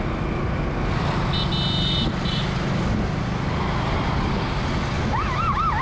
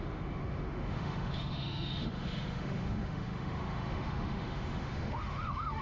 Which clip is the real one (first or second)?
first